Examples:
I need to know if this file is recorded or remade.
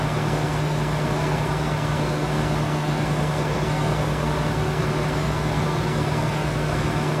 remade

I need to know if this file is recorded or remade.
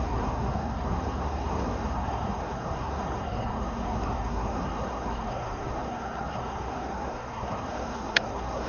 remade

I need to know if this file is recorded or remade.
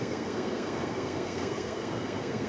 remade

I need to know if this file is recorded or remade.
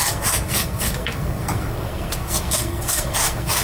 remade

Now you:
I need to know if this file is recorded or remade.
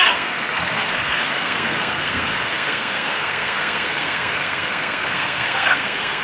remade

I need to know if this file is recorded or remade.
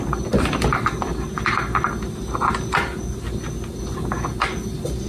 recorded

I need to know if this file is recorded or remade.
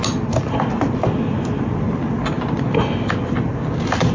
recorded